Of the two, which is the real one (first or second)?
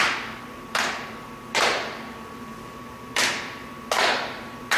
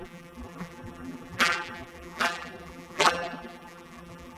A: first